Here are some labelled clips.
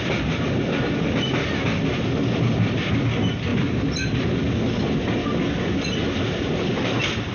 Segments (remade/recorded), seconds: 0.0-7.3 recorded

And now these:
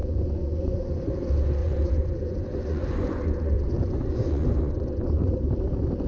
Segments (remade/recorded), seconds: 0.0-1.0 remade; 1.0-1.6 recorded; 1.6-5.3 remade; 5.3-6.1 recorded

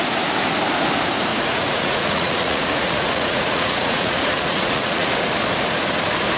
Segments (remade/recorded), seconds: 0.0-1.3 recorded; 1.3-5.1 remade; 5.1-6.4 recorded

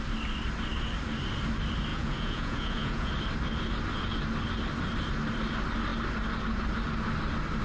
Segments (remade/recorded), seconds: 0.0-1.9 recorded; 1.9-3.1 remade; 3.1-7.6 recorded

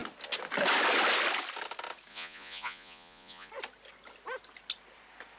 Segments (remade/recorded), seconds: 0.0-2.1 recorded; 2.1-3.5 remade; 3.5-5.4 recorded

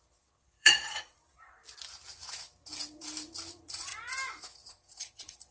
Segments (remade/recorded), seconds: 0.0-1.6 remade; 1.6-3.5 recorded; 3.5-3.9 remade; 3.9-4.7 recorded; 4.7-5.5 remade

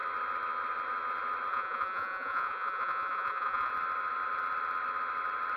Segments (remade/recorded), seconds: 0.0-1.5 recorded; 1.5-3.7 remade; 3.7-5.6 recorded